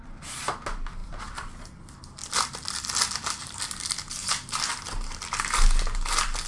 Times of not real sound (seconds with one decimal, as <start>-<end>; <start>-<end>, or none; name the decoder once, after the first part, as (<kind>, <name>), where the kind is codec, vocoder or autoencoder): 1.0-1.5 (vocoder, BigVGAN v2); 2.2-2.8